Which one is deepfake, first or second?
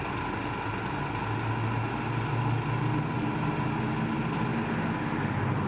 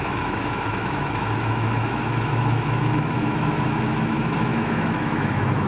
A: second